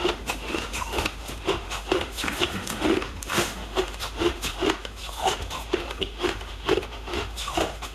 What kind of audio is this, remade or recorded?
remade